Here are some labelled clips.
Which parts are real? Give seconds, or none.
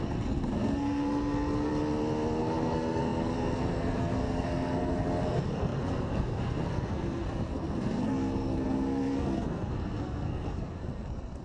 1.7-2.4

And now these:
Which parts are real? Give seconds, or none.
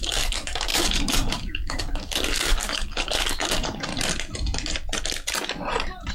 3.9-6.1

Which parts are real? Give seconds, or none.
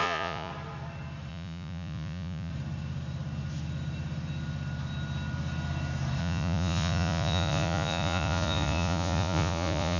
0.5-1.3; 2.5-6.2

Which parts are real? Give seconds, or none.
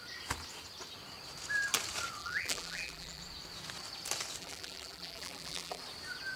0.0-2.2; 3.2-4.4; 5.8-6.4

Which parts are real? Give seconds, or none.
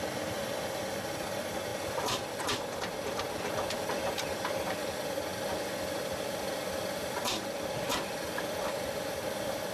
none